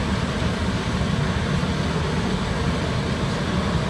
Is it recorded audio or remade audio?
recorded